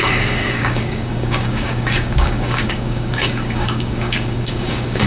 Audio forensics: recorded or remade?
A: remade